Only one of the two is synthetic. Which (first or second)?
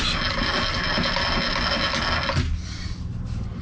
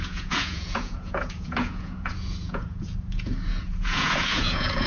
second